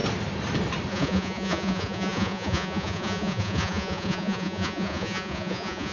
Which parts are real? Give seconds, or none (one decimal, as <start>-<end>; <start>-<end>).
0.0-0.9